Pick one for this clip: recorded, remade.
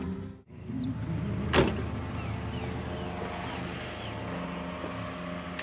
recorded